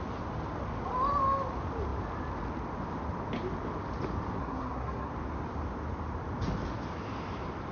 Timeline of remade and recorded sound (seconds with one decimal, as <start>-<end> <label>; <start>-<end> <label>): 0.0-4.4 recorded; 4.4-5.1 remade; 5.1-7.7 recorded